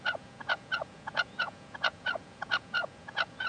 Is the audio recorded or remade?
remade